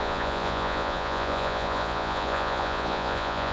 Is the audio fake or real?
fake